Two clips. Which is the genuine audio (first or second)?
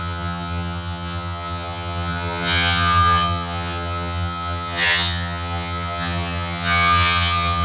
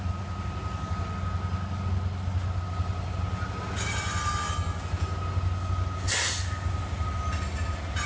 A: second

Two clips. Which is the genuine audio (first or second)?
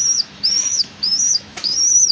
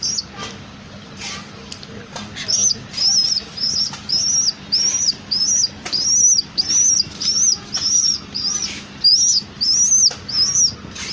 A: second